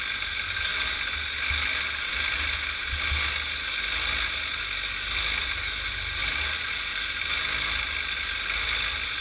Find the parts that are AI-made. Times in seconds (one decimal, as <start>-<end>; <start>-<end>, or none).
6.2-7.2